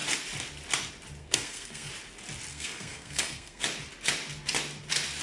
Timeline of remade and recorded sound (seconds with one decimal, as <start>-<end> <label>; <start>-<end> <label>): 0.0-1.2 recorded; 1.2-1.9 remade; 1.9-2.5 recorded; 2.5-3.6 remade; 3.6-5.2 recorded